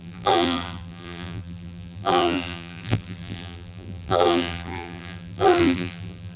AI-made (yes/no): yes